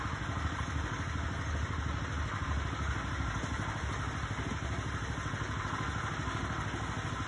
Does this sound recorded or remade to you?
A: recorded